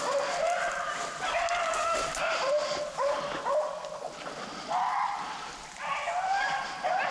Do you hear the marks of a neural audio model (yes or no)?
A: no